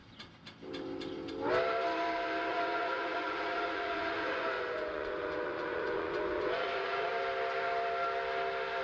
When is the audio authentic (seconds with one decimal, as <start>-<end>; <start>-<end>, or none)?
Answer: 0.0-2.5; 7.1-8.8

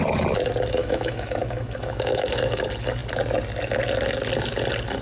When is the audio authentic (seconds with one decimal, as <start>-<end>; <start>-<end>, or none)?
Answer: 0.0-0.8; 2.6-5.0

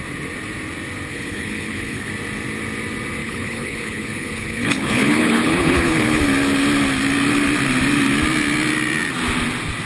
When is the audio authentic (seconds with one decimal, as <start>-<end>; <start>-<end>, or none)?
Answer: 0.0-1.1; 2.1-3.2; 6.2-9.9

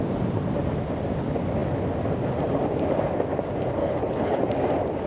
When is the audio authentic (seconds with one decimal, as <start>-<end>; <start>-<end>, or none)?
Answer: 0.0-3.8; 4.4-5.1

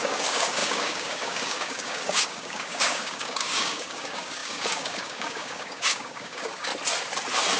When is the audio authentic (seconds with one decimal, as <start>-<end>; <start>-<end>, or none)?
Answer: 6.7-7.6

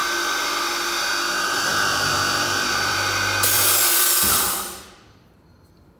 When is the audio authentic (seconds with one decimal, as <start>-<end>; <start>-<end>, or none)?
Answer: 1.1-1.7; 5.3-6.0

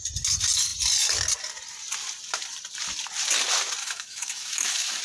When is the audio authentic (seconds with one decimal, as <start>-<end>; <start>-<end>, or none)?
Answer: 0.0-3.8